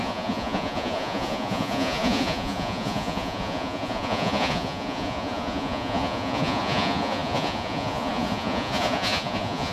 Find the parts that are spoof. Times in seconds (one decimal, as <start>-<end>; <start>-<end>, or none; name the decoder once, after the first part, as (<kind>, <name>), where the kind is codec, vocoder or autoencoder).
0.0-9.7 (vocoder, Vocos)